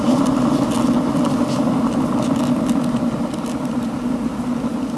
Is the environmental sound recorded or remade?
recorded